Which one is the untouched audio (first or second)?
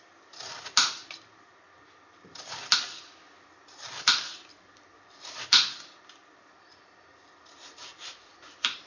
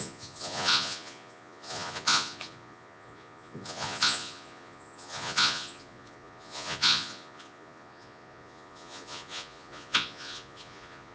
first